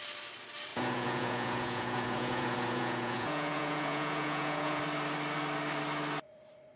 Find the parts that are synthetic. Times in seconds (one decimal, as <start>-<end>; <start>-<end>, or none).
0.7-4.8

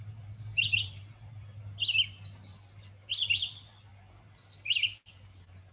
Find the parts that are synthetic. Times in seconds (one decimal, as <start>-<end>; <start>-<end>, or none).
none

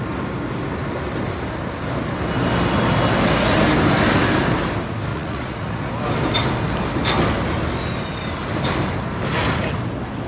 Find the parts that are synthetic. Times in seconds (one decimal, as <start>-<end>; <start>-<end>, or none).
5.1-5.9

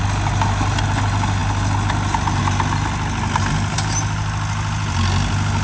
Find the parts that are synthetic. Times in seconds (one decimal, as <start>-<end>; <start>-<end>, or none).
none

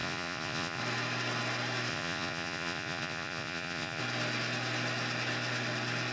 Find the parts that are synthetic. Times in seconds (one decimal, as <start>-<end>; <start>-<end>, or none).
0.0-0.8; 1.9-4.0

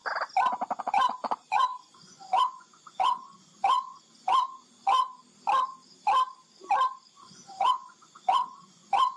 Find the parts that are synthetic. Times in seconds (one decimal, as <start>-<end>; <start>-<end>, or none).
0.8-5.2; 7.2-9.2

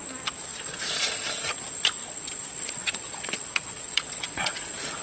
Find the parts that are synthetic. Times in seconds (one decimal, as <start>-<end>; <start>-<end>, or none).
0.5-1.1; 2.0-5.0